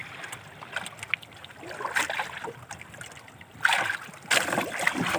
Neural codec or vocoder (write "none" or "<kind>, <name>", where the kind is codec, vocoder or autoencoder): none